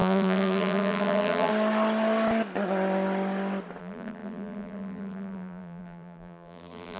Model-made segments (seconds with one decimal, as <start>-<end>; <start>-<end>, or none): 0.0-1.5; 3.8-7.0